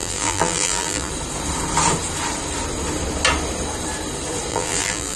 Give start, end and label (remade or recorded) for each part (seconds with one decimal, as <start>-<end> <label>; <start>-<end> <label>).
0.0-1.1 remade; 1.1-4.5 recorded; 4.5-5.2 remade

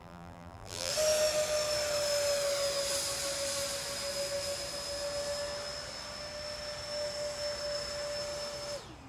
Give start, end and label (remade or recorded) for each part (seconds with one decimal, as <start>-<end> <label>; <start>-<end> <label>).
0.0-0.9 remade; 0.9-9.1 recorded